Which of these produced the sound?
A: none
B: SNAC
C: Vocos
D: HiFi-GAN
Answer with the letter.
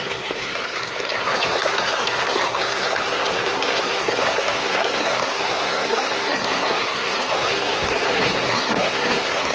B